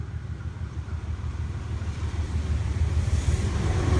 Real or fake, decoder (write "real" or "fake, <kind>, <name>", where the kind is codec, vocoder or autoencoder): fake, vocoder, BigVGAN v2